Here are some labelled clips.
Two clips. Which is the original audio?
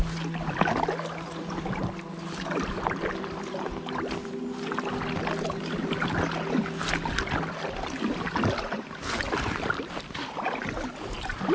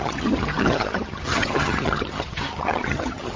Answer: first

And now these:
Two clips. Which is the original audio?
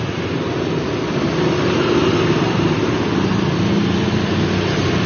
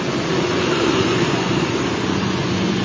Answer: first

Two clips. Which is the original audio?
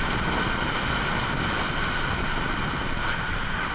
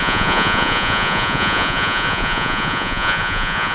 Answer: first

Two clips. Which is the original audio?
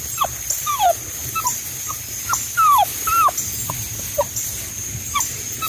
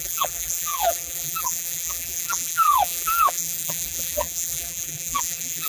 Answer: first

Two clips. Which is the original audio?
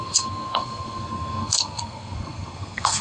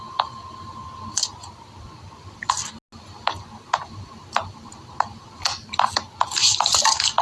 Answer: second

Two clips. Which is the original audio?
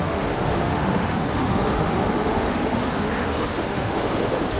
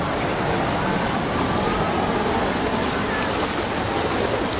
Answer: second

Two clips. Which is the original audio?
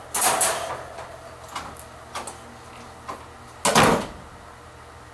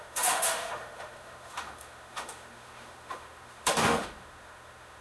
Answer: first